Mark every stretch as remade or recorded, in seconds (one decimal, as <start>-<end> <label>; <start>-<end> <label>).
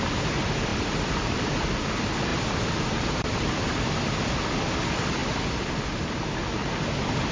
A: 0.0-0.7 recorded; 0.7-1.9 remade; 1.9-2.3 recorded; 2.3-3.2 remade; 3.2-7.3 recorded